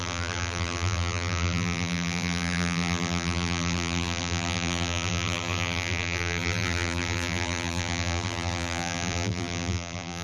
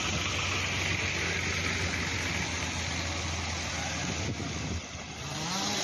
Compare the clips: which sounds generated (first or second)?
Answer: first